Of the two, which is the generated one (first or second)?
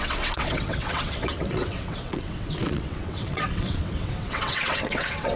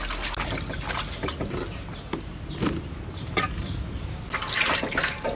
first